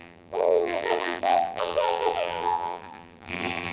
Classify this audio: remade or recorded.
remade